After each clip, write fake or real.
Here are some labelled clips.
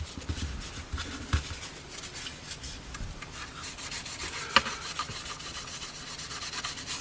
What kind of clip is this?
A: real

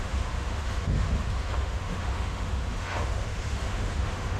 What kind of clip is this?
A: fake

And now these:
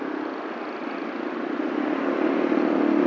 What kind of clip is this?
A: real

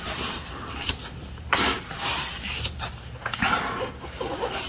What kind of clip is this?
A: fake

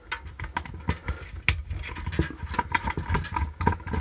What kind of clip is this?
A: real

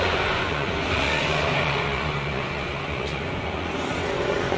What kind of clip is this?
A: fake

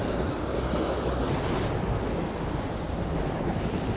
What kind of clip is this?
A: real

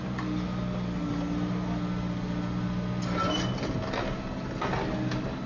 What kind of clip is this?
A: real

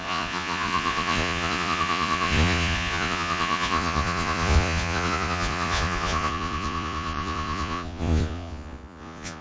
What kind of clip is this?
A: fake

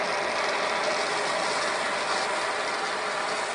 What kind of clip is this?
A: real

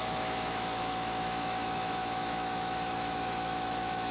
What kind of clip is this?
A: fake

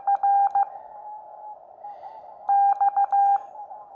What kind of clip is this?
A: real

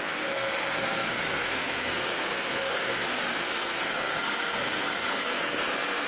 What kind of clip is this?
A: fake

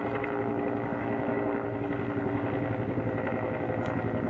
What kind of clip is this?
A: real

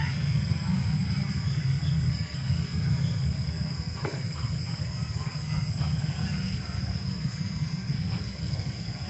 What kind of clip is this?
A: fake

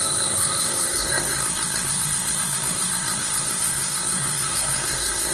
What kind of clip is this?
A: fake